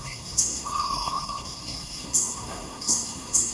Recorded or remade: remade